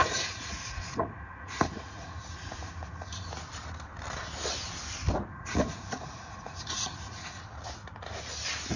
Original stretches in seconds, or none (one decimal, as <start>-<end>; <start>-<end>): 3.3-5.3; 7.4-8.8